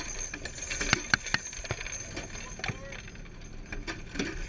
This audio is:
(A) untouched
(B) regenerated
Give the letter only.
A